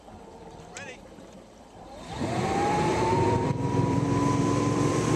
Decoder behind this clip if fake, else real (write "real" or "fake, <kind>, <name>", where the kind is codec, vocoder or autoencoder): fake, vocoder, BigVGAN v2